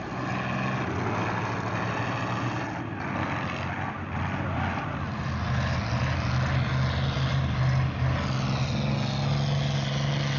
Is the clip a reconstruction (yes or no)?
no